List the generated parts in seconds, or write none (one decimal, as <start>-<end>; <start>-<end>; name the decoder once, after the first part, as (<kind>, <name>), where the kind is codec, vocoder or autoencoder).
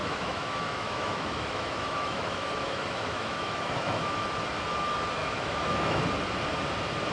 0.0-4.3 (autoencoder, DAC-VAE); 5.2-6.0